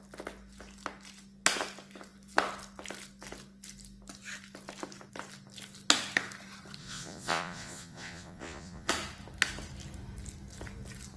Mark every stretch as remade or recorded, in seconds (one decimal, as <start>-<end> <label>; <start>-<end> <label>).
0.0-6.8 recorded; 6.8-8.9 remade; 8.9-11.2 recorded